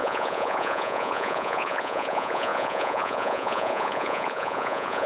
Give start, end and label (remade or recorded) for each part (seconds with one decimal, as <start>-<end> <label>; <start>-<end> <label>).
0.0-5.1 remade